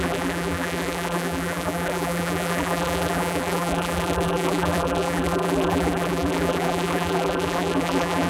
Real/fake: fake